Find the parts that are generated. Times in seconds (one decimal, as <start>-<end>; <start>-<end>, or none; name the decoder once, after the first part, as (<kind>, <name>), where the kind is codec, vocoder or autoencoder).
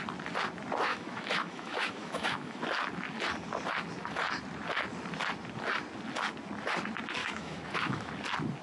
0.9-2.6 (autoencoder, DAC-VAE); 7.2-8.1